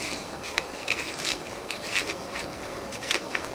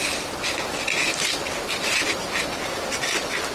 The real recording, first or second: second